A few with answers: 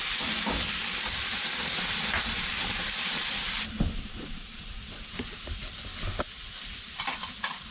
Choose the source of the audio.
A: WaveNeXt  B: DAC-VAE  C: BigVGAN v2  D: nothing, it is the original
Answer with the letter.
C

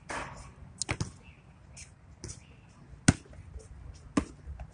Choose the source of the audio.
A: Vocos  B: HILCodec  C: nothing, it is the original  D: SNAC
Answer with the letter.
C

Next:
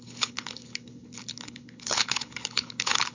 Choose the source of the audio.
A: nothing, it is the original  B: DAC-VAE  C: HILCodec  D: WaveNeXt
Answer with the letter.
C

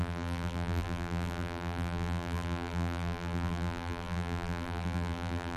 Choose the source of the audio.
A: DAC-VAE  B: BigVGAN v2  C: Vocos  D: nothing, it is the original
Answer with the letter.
B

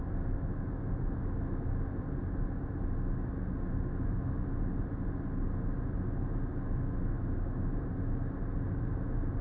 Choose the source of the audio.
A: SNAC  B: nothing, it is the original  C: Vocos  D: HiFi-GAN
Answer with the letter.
B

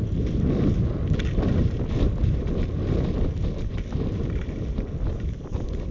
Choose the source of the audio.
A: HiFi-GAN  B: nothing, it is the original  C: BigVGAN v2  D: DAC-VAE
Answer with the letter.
B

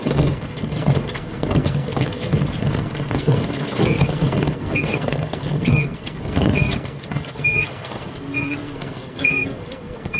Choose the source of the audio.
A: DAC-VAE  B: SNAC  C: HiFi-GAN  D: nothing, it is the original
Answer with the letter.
B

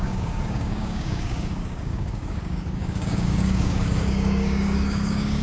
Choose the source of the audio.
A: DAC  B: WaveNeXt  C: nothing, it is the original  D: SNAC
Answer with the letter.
A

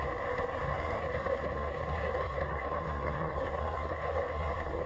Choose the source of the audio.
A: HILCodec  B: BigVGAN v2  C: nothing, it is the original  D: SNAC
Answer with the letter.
D